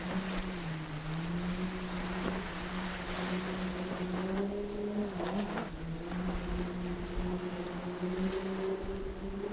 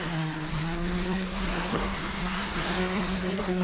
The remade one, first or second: second